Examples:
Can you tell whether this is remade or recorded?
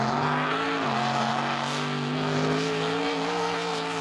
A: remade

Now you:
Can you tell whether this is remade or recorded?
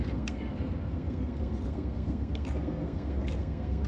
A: remade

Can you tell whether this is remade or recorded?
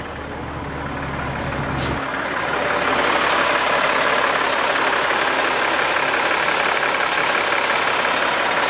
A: recorded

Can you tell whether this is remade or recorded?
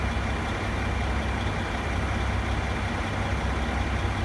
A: recorded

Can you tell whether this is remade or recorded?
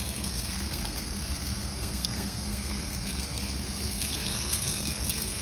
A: remade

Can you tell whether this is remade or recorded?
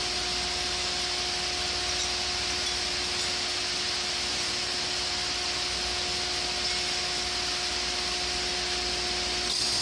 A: recorded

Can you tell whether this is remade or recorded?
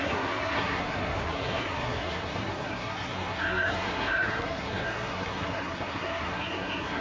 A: remade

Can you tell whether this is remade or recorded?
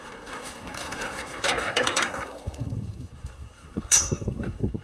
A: remade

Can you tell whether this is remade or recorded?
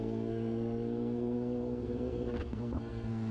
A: remade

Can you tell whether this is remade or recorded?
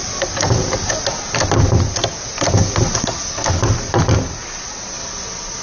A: recorded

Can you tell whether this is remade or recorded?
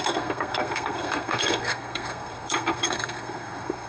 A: remade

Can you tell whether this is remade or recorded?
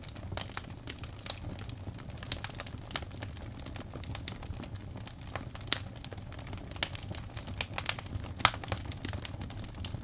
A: recorded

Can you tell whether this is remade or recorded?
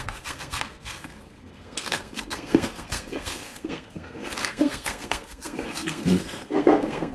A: remade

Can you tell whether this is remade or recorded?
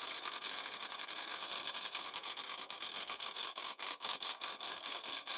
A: remade